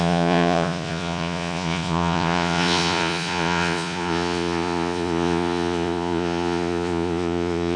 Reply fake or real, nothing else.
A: fake